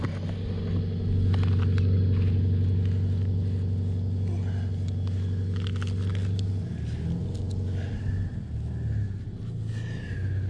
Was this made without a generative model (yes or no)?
yes